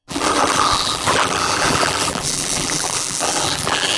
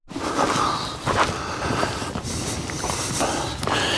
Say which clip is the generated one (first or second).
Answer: first